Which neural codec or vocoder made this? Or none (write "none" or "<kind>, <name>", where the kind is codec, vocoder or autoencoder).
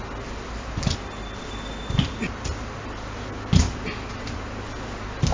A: none